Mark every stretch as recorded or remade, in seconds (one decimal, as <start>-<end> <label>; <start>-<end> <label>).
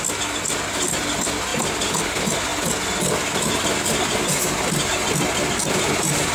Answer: 0.0-6.3 recorded